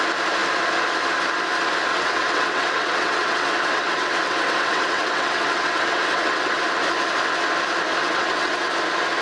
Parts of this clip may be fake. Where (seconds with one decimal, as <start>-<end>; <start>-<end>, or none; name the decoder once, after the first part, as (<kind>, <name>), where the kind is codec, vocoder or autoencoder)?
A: 1.9-6.6 (vocoder, WaveNeXt); 8.0-8.7